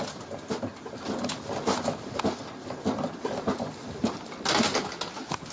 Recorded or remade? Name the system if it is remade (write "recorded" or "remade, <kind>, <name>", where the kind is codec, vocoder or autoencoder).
recorded